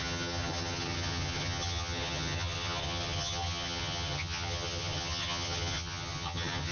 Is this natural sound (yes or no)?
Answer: no